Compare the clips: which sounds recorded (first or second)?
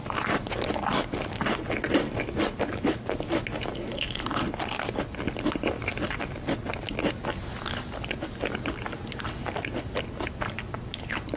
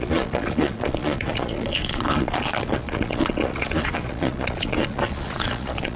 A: first